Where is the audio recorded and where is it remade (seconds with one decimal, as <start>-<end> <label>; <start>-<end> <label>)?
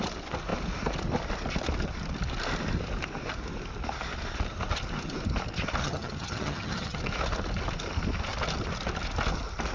0.0-5.8 recorded; 5.8-7.0 remade; 7.0-9.7 recorded